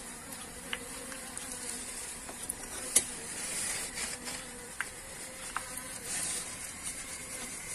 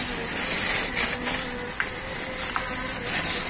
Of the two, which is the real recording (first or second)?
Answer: second